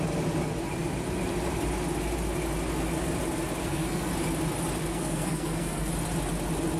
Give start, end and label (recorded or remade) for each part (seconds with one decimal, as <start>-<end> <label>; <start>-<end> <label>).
0.0-3.6 recorded; 3.6-4.1 remade; 4.1-4.9 recorded; 4.9-5.9 remade; 5.9-6.8 recorded